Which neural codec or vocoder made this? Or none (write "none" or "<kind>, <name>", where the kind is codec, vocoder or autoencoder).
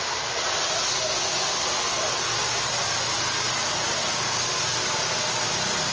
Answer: none